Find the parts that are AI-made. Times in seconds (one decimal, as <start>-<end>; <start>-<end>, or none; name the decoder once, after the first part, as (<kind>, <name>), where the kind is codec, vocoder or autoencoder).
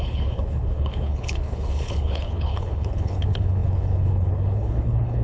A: 0.0-5.2 (codec, HILCodec)